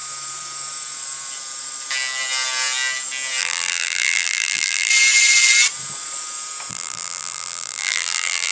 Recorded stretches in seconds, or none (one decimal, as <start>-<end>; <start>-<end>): 0.0-3.4; 4.9-6.7

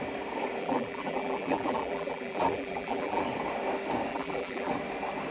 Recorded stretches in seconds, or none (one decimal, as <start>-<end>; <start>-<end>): 0.0-0.6; 3.2-4.1; 4.7-5.3